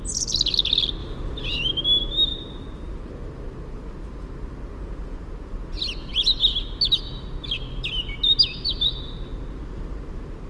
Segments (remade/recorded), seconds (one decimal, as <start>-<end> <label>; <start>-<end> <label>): 0.0-1.0 recorded; 1.0-1.7 remade; 1.7-2.3 recorded; 2.3-3.0 remade; 3.0-10.5 recorded